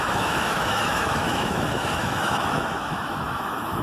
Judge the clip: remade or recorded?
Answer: remade